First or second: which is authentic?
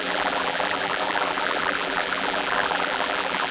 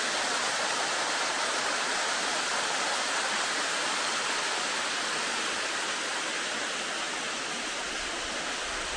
second